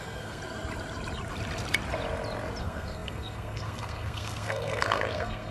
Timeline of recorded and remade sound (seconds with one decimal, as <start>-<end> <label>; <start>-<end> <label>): 0.0-0.4 remade; 0.4-2.6 recorded; 2.6-5.5 remade